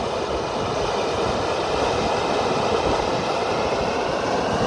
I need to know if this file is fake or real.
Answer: real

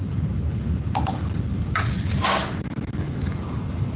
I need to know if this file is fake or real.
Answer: real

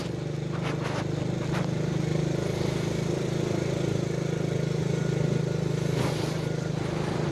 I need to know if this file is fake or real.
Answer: real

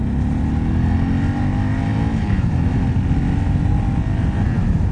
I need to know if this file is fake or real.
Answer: real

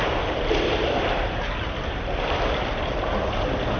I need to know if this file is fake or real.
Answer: real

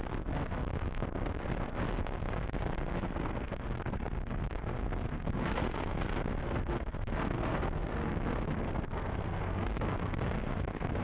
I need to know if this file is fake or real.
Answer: fake